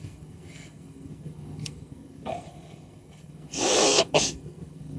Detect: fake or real fake